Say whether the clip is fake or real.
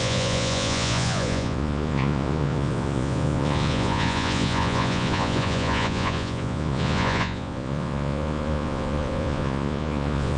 fake